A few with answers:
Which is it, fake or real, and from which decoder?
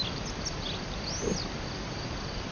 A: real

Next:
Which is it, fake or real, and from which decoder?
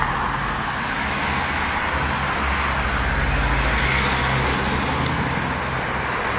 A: real